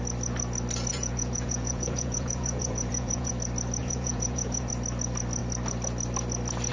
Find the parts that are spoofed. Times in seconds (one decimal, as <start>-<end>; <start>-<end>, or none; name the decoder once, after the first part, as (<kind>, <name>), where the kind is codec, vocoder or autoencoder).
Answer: 0.9-3.3 (vocoder, Vocos); 3.8-4.7